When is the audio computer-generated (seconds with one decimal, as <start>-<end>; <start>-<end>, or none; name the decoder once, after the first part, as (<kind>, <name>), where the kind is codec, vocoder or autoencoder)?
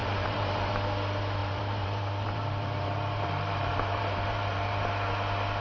0.0-0.7 (vocoder, BigVGAN v2); 1.4-4.8